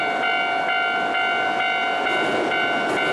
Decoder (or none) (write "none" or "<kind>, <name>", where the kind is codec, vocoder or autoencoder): none